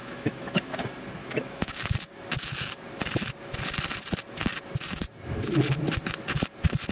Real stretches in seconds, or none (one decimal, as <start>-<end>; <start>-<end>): 0.7-1.2; 1.8-6.9